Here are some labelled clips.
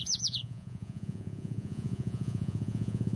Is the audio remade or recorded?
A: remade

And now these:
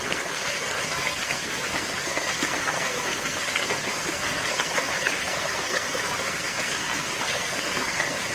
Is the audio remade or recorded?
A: remade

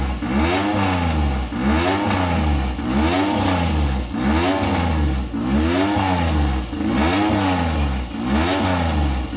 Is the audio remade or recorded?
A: recorded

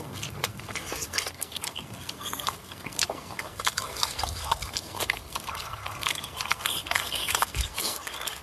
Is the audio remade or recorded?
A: remade